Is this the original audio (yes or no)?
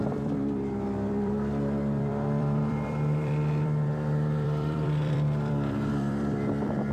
no